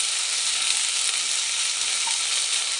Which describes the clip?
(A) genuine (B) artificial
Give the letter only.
A